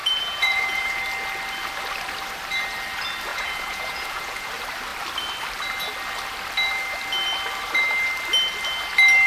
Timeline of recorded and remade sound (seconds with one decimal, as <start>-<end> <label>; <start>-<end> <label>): 0.0-1.0 remade; 1.0-3.3 recorded; 3.3-4.5 remade; 4.5-9.3 recorded